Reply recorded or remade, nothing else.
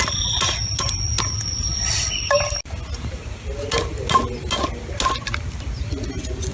recorded